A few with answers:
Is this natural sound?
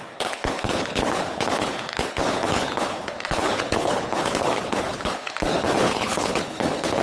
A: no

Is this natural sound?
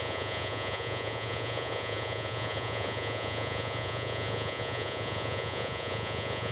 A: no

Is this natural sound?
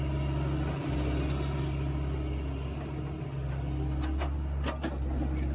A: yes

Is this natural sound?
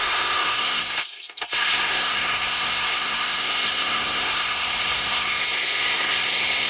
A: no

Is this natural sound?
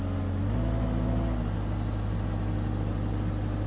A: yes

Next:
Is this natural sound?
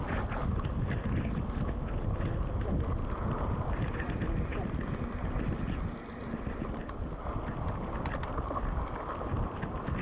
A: yes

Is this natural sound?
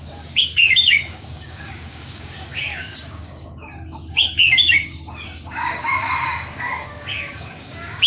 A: no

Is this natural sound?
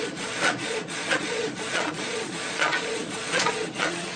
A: no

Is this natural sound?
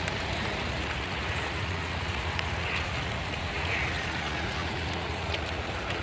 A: no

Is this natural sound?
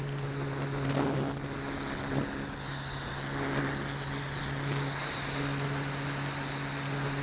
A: yes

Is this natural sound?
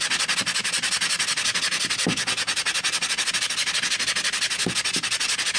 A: yes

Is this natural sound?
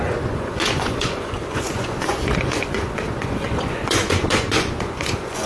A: no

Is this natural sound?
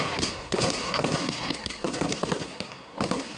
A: no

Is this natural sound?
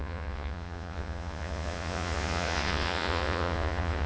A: no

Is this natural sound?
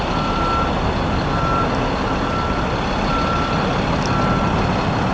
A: yes